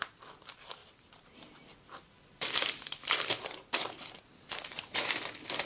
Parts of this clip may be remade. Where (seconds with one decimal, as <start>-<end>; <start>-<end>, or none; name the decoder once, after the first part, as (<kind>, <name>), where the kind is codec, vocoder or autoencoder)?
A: none